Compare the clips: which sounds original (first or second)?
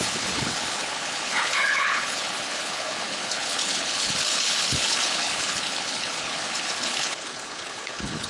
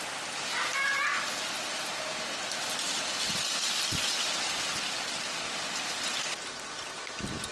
second